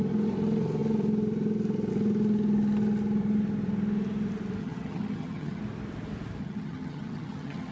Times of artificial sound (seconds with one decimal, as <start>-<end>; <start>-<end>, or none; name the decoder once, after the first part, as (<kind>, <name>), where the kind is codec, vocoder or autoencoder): 4.6-5.6 (vocoder, HiFi-GAN); 6.4-7.7